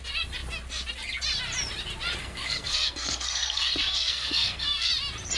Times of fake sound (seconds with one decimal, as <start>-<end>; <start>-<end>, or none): 2.2-4.9